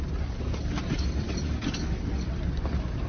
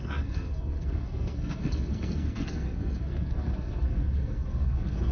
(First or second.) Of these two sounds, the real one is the first